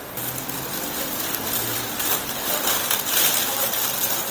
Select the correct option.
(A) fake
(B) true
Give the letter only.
B